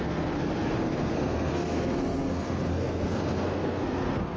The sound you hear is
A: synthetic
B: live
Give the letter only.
A